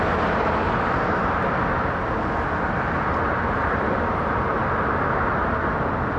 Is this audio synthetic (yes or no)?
no